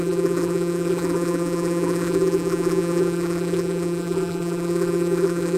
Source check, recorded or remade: remade